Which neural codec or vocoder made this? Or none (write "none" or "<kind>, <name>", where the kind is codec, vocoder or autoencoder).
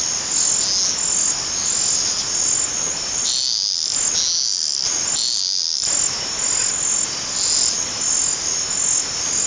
none